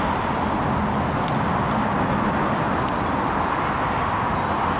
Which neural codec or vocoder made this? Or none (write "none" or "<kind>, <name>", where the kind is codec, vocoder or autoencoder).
none